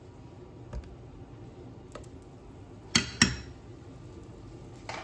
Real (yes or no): yes